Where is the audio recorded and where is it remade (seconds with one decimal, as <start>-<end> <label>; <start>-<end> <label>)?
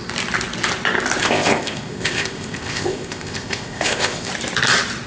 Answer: 0.0-1.2 recorded; 1.2-4.3 remade; 4.3-5.1 recorded